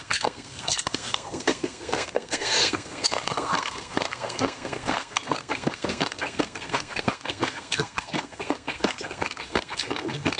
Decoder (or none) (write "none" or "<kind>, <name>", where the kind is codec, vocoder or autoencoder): codec, SNAC